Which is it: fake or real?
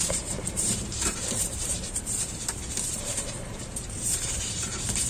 fake